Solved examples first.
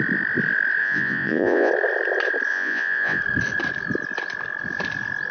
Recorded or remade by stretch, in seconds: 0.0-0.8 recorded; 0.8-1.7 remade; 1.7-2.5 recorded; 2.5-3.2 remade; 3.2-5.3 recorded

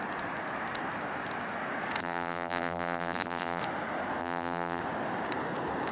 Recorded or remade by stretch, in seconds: 0.0-2.0 recorded; 2.0-3.6 remade; 3.6-4.2 recorded; 4.2-4.8 remade; 4.8-5.9 recorded

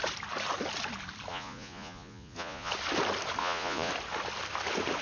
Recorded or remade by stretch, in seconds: 0.0-1.3 recorded; 1.3-2.7 remade; 2.7-3.4 recorded; 3.4-3.9 remade; 3.9-5.0 recorded

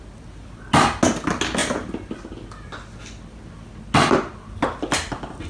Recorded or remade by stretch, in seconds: 0.0-5.5 recorded

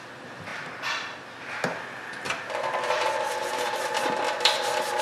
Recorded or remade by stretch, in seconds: 0.0-0.5 remade; 0.5-3.5 recorded; 3.5-5.0 remade